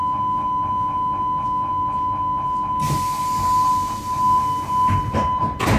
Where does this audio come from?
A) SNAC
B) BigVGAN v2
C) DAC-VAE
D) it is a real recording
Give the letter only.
D